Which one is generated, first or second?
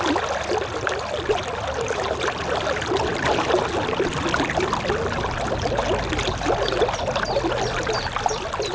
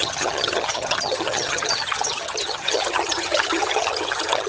second